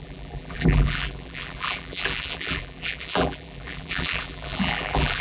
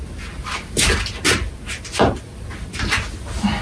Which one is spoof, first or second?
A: first